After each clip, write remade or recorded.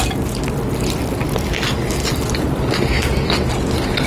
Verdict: recorded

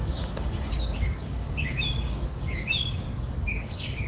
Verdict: remade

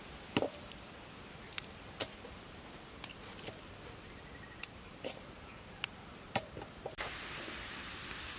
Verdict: remade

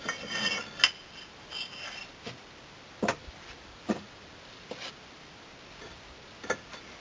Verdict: recorded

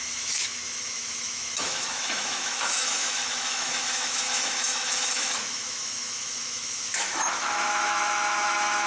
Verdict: remade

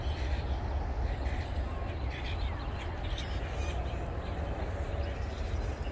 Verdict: recorded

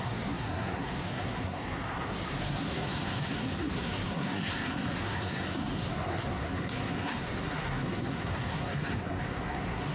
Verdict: remade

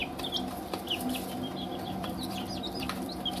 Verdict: remade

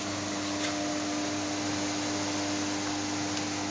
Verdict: recorded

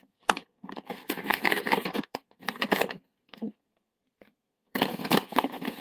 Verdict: remade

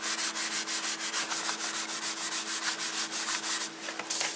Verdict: recorded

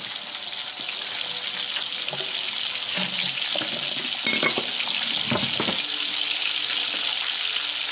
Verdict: recorded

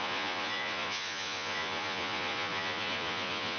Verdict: remade